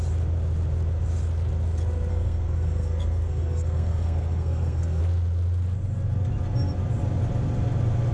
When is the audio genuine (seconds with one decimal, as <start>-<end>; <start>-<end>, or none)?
0.0-2.1; 5.0-8.1